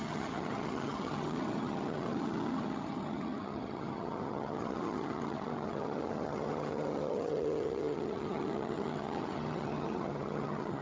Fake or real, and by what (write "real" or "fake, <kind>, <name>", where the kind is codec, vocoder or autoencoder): fake, vocoder, HiFi-GAN